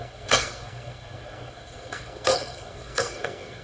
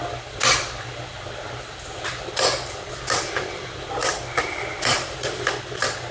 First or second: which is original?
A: second